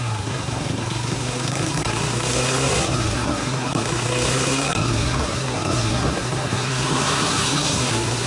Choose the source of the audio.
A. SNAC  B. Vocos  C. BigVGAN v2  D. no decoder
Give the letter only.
A